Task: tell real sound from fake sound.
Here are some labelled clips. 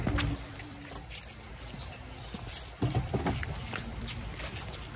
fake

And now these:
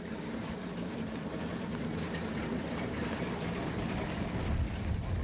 fake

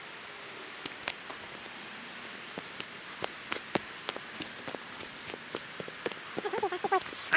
real